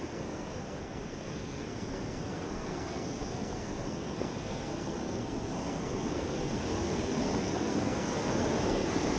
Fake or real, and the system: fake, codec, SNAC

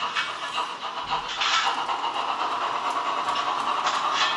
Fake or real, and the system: real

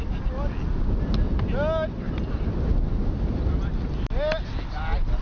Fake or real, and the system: real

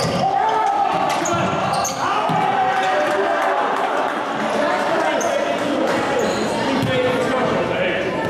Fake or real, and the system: real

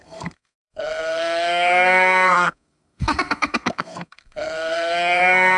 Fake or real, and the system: fake, codec, SNAC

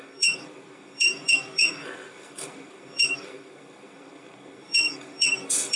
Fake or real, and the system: fake, codec, SNAC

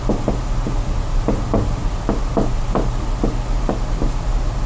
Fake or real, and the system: real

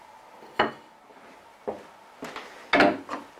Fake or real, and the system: real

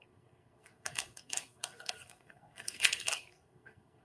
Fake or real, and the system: fake, codec, SNAC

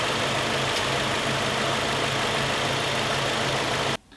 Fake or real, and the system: real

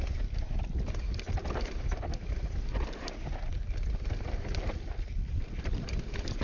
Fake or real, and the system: real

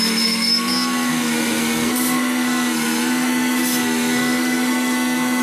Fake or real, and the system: fake, codec, SNAC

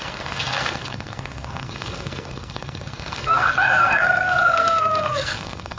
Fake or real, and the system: fake, codec, SNAC